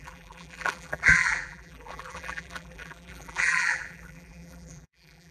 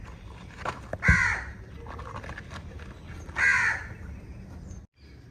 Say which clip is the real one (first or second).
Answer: second